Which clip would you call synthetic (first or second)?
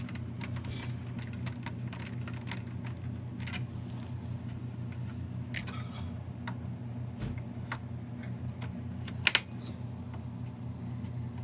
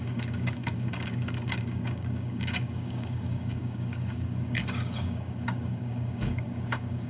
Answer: second